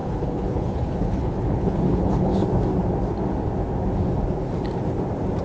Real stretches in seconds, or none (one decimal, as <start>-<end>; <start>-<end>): 2.4-5.4